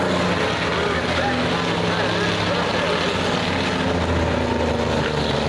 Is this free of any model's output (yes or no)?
yes